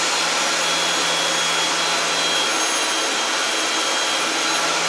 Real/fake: real